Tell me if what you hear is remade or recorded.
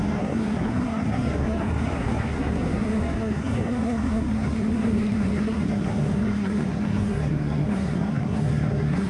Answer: remade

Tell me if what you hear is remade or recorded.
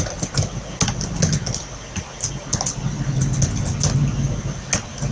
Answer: recorded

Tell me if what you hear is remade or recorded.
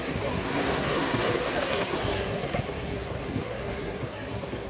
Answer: remade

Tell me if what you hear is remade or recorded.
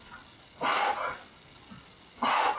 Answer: recorded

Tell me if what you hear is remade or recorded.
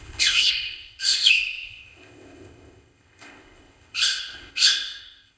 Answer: remade